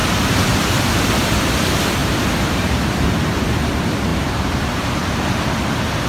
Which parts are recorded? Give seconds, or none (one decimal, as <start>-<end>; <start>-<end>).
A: 0.0-2.0; 3.5-4.1; 5.1-6.1